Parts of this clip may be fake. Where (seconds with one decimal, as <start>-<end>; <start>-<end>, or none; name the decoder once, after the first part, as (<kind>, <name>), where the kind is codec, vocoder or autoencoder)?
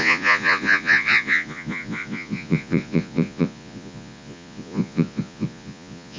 0.0-6.2 (vocoder, Vocos)